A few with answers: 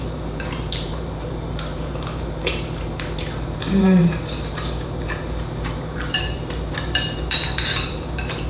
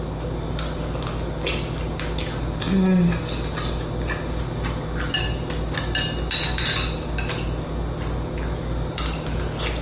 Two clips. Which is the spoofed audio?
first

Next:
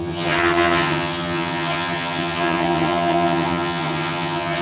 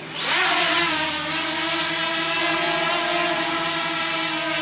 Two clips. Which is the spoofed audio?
first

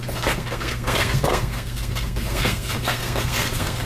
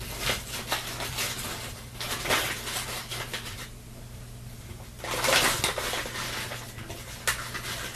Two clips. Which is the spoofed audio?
first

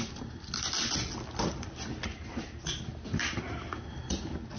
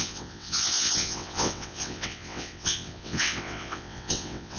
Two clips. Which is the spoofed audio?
second